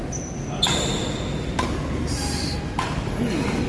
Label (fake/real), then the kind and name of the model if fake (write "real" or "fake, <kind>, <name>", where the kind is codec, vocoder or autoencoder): real